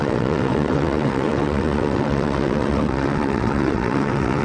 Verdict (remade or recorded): remade